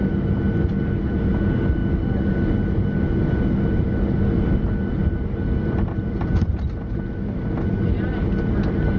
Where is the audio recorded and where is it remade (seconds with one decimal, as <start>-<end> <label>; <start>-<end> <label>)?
0.0-9.0 recorded